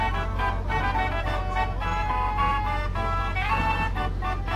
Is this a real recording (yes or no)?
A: yes